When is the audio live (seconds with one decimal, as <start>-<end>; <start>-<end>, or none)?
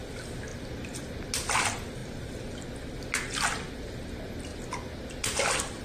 0.0-5.8